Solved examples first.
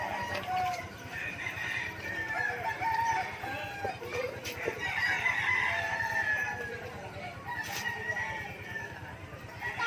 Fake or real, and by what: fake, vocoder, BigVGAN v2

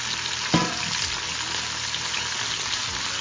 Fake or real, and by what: real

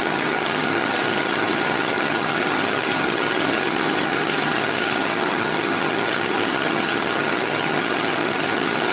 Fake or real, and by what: fake, vocoder, HiFi-GAN